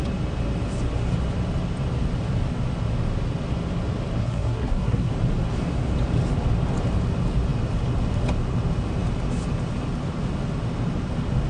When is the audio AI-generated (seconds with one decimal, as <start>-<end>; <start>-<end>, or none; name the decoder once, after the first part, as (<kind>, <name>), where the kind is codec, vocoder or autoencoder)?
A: 4.2-5.1 (codec, SNAC)